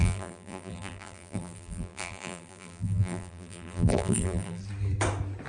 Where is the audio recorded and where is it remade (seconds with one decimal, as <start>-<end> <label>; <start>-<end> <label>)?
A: 0.0-4.6 remade; 4.6-5.5 recorded